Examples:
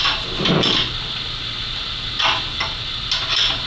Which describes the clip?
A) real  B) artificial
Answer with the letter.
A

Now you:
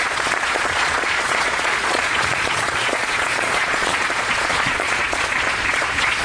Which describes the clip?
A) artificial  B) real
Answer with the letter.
A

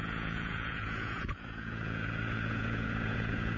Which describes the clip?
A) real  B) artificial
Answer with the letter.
B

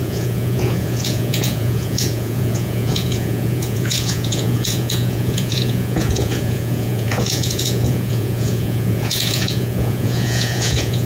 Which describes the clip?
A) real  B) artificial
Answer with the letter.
B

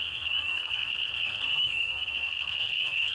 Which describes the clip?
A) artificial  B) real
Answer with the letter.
A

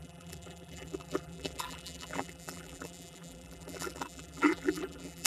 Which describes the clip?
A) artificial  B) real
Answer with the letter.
A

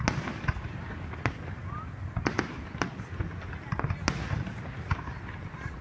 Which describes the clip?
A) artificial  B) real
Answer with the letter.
B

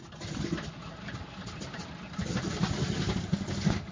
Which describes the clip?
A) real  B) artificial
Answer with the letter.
A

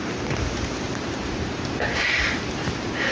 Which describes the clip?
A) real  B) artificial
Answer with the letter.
B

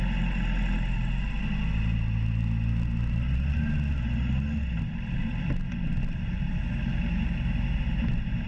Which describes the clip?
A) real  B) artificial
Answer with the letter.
A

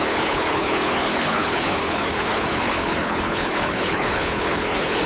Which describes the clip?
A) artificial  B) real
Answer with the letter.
A